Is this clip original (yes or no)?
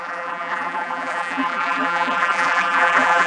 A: no